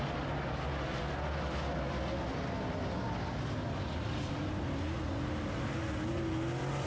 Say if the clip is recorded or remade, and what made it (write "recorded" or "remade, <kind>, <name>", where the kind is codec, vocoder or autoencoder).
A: recorded